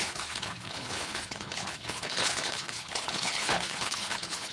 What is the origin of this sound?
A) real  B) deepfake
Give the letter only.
B